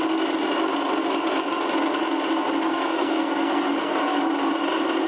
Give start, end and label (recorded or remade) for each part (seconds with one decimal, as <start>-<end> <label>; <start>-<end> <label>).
0.0-2.7 recorded; 2.7-4.2 remade; 4.2-5.1 recorded